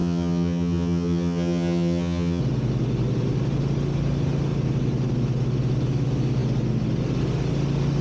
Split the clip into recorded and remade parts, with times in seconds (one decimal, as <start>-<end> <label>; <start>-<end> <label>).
0.0-2.4 remade; 2.4-8.0 recorded